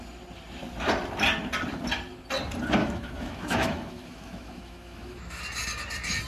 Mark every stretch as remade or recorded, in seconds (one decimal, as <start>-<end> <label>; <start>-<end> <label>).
0.0-2.8 recorded; 2.8-5.4 remade; 5.4-6.3 recorded